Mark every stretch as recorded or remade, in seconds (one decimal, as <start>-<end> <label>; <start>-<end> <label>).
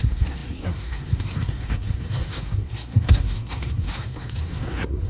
0.0-5.1 remade